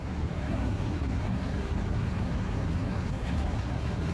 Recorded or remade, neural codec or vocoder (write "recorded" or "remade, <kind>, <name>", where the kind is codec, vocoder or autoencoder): remade, codec, SNAC